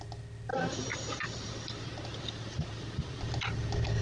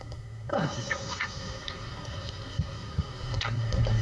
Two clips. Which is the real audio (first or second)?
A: first